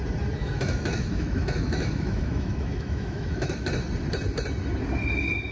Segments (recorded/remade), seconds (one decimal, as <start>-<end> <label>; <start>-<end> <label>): 0.0-0.4 recorded; 0.4-3.7 remade; 3.7-5.5 recorded

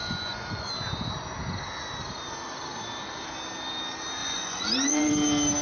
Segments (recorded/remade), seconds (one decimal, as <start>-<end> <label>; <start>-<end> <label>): 0.0-0.7 remade; 0.7-4.2 recorded; 4.2-5.1 remade; 5.1-5.6 recorded

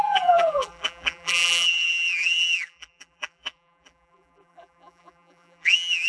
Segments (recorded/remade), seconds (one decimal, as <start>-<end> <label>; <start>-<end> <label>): 0.0-6.1 remade

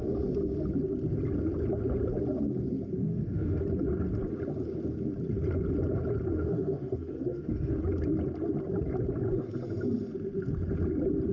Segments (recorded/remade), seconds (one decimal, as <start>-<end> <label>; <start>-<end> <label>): 0.0-3.0 recorded; 3.0-3.6 remade; 3.6-6.3 recorded; 6.3-7.8 remade; 7.8-11.3 recorded

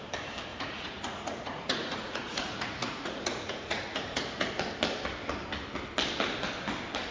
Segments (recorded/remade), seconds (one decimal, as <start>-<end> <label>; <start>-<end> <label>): 0.0-0.5 recorded; 0.5-4.5 remade; 4.5-7.1 recorded

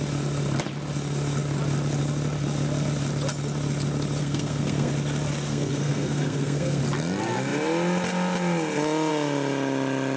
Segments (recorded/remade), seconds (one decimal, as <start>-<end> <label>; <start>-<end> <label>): 0.0-4.2 recorded; 4.2-4.9 remade; 4.9-5.5 recorded; 5.5-6.8 remade; 6.8-10.2 recorded

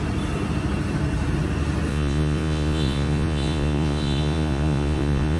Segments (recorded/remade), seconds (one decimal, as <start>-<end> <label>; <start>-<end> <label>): 0.0-1.9 recorded; 1.9-5.4 remade